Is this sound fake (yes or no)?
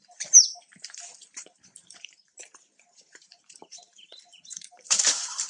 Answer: yes